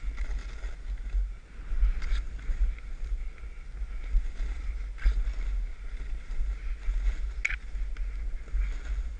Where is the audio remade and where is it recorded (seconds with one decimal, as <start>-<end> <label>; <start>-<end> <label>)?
0.0-9.2 recorded